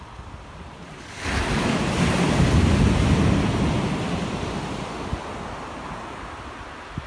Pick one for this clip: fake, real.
real